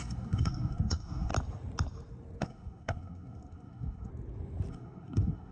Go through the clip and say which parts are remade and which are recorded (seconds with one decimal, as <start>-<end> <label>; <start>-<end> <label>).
0.0-1.3 remade; 1.3-2.4 recorded; 2.4-4.1 remade; 4.1-4.7 recorded; 4.7-5.5 remade